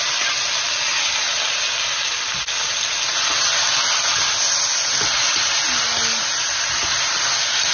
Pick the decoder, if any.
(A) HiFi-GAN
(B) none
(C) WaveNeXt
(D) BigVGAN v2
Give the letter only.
B